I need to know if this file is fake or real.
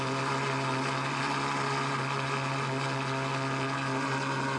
real